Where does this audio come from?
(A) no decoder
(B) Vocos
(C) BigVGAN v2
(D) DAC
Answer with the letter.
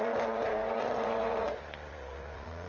B